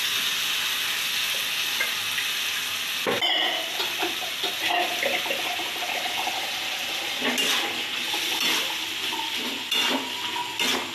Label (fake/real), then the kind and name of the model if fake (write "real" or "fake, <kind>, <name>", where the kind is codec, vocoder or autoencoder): real